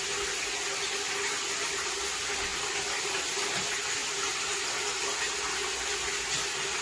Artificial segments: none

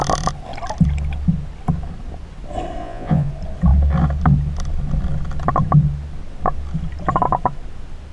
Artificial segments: 2.8-3.3 (vocoder, Vocos)

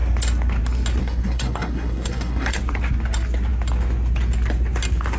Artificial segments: 1.0-2.6 (codec, SNAC)

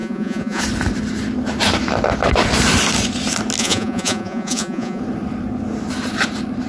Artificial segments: 0.0-0.6 (vocoder, Vocos); 3.6-5.0